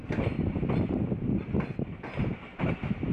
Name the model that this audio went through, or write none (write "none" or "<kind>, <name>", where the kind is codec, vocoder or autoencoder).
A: none